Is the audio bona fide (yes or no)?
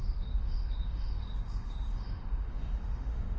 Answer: no